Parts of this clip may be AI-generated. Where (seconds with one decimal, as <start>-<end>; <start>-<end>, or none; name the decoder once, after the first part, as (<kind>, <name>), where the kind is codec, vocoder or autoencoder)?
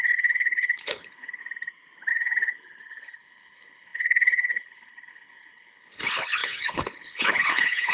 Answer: 0.0-1.4 (codec, HILCodec); 2.1-7.9